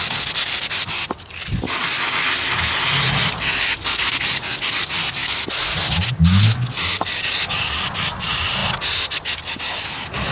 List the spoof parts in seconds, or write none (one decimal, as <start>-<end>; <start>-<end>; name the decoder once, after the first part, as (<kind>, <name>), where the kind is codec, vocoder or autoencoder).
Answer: none